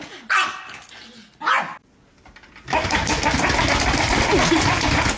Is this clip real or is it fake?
real